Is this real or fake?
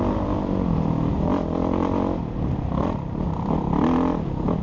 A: real